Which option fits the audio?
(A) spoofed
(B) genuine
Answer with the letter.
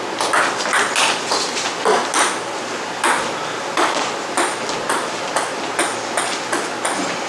B